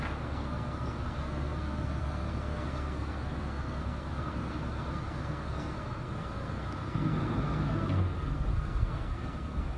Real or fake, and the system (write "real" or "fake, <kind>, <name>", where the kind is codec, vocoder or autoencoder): fake, codec, SNAC